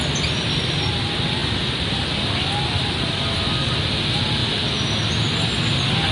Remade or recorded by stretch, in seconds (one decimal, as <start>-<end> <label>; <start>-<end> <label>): 0.0-6.1 recorded